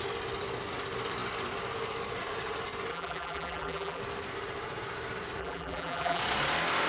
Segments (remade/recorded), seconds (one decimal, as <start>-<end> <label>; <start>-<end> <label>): 0.0-2.9 recorded; 2.9-4.0 remade; 4.0-5.4 recorded; 5.4-6.2 remade; 6.2-6.9 recorded